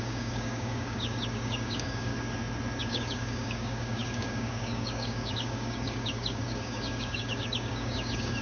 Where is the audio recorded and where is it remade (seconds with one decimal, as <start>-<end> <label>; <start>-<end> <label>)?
0.0-2.1 remade; 2.1-2.8 recorded; 2.8-8.4 remade